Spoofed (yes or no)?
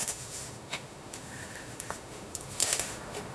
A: yes